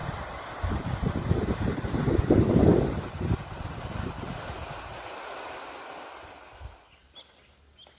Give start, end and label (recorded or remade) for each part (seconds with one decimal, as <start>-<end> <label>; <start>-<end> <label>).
0.0-8.0 recorded